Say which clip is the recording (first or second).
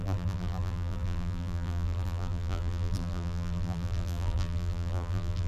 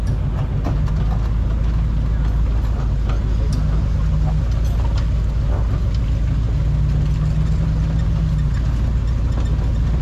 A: second